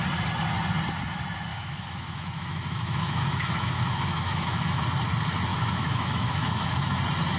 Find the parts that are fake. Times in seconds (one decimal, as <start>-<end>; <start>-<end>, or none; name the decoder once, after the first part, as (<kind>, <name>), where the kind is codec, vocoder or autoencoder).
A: 1.5-4.8 (autoencoder, DAC-VAE); 5.5-7.0